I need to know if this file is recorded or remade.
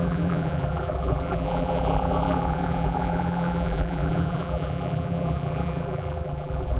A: remade